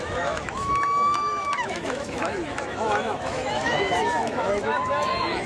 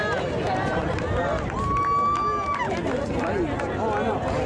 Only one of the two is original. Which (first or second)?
second